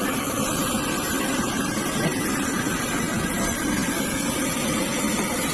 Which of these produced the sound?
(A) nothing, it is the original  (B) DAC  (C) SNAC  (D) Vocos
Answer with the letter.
A